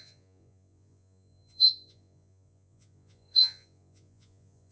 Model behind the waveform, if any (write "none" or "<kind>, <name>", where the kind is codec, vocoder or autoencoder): vocoder, Vocos